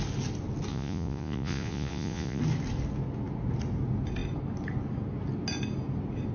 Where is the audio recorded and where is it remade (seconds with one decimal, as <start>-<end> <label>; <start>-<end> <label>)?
0.0-0.7 recorded; 0.7-2.4 remade; 2.4-6.3 recorded